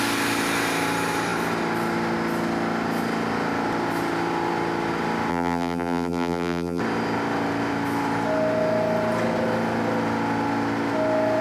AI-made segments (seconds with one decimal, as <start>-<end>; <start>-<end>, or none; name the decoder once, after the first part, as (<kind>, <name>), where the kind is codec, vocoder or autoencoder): 5.3-6.8 (vocoder, BigVGAN v2)